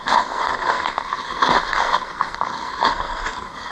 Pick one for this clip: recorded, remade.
remade